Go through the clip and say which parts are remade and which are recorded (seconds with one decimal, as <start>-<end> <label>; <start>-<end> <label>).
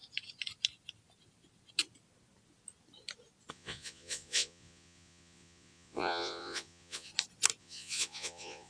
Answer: 0.0-3.5 recorded; 3.5-7.1 remade; 7.1-7.6 recorded; 7.6-8.7 remade